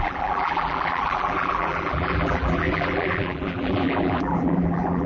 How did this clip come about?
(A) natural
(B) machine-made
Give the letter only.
B